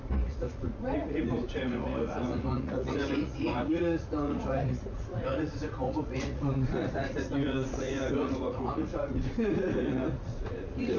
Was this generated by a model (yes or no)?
yes